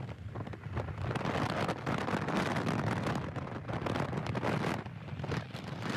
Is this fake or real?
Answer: real